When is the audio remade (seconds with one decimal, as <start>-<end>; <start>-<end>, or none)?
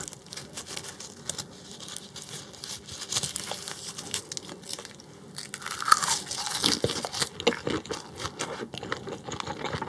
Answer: none